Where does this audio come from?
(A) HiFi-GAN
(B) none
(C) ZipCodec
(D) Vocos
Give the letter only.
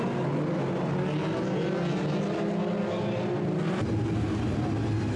B